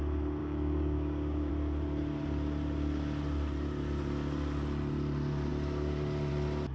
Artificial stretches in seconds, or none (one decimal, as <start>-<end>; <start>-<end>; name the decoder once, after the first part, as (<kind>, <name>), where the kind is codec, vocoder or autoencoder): 0.4-1.5 (codec, DAC)